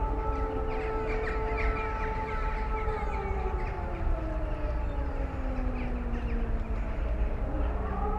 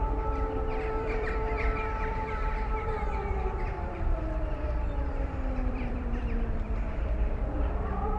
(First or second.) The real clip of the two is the first